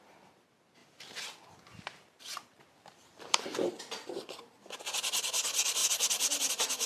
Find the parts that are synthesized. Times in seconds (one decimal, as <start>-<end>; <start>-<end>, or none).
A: 0.8-3.8